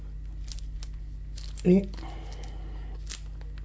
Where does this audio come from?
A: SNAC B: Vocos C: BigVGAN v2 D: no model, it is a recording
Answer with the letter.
D